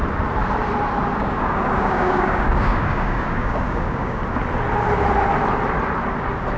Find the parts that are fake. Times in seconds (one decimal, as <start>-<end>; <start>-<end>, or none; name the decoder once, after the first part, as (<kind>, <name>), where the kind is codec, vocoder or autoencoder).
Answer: 1.2-4.2 (codec, DAC)